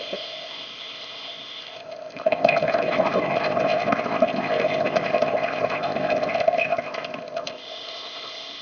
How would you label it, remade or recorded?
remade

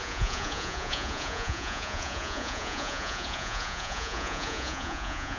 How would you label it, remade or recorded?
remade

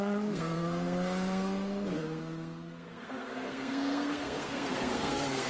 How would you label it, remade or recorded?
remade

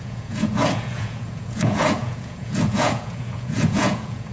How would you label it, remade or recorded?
remade